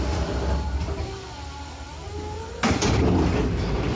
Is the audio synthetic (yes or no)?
no